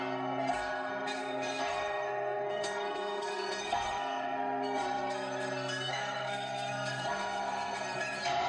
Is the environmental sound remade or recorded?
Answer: remade